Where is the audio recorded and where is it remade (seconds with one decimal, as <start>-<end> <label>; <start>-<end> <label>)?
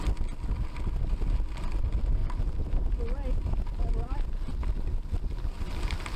0.0-2.2 recorded; 2.2-5.8 remade; 5.8-6.2 recorded